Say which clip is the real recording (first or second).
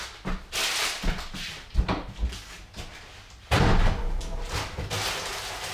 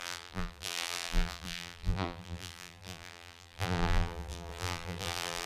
first